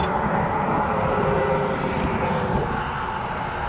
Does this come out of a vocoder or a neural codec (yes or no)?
no